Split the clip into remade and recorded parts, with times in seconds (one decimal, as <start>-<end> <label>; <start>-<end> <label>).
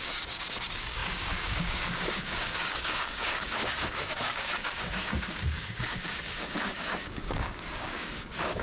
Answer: 0.0-8.6 remade